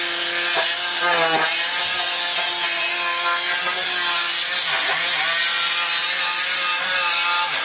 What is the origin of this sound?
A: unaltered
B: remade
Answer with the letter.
A